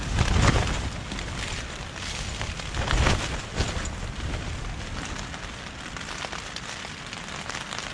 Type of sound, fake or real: real